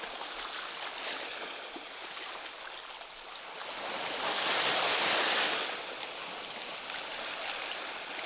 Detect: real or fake real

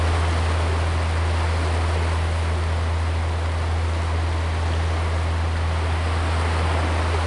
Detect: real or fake real